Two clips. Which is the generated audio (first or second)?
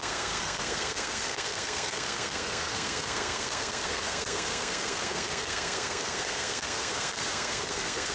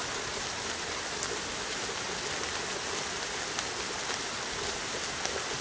first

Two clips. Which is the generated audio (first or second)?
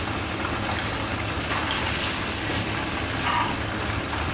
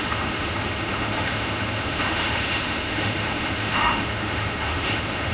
second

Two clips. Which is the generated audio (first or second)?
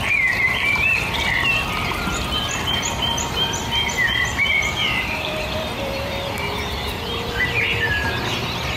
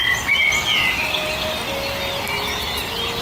first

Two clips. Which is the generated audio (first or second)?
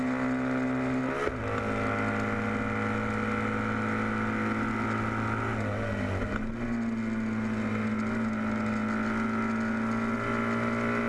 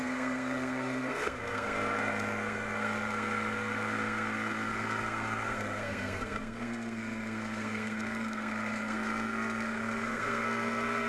second